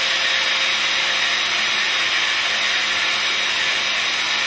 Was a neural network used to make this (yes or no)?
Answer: no